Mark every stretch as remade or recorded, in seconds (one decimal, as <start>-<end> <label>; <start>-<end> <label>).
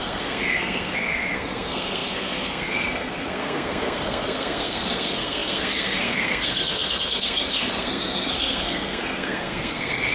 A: 0.0-10.1 remade